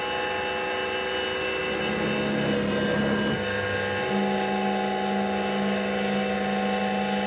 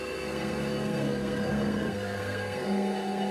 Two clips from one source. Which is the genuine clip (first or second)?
first